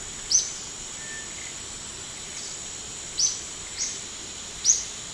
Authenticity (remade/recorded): recorded